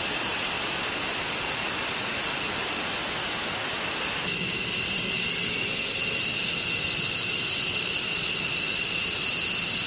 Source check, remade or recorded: recorded